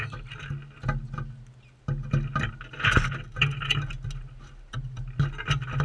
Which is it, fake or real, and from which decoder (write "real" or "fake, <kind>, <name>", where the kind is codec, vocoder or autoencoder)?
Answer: real